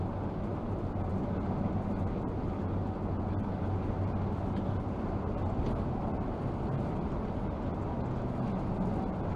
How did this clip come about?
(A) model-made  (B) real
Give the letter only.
B